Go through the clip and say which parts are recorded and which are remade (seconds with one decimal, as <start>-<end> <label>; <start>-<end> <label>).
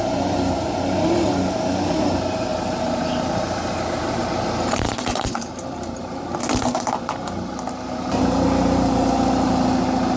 0.0-2.5 recorded; 2.5-4.3 remade; 4.3-5.1 recorded; 5.1-6.8 remade; 6.8-10.2 recorded